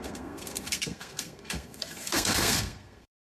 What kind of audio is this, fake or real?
fake